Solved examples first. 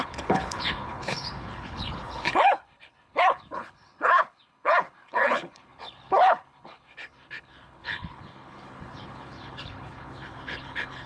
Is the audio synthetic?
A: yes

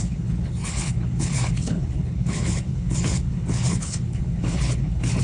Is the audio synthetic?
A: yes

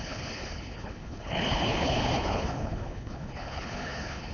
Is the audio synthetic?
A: yes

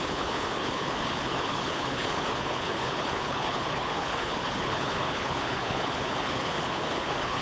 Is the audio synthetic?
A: yes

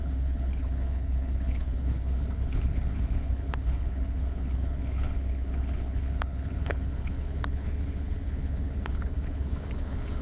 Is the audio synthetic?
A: yes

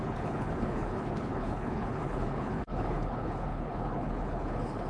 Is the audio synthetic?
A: yes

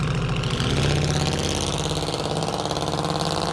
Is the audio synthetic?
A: no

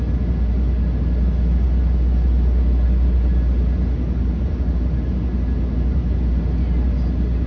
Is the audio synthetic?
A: no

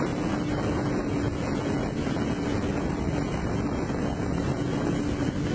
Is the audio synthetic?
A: no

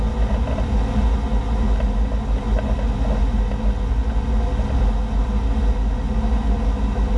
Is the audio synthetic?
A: no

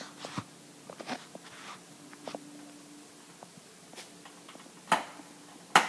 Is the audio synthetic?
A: no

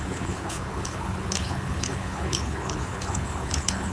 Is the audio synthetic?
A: yes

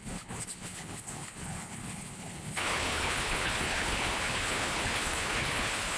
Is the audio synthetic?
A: yes